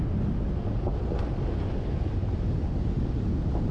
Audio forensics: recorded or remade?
recorded